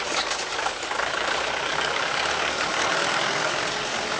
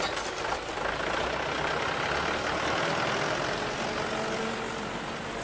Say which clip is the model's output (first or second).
first